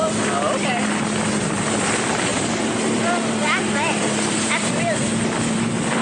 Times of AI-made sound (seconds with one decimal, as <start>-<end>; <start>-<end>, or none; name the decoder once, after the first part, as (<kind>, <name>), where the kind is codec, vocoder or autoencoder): 2.3-6.0 (vocoder, BigVGAN v2)